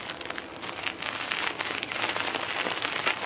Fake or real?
real